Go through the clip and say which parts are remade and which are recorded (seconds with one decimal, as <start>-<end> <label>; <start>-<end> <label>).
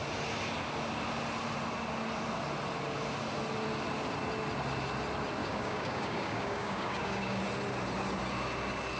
0.0-5.4 recorded; 5.4-7.4 remade; 7.4-9.0 recorded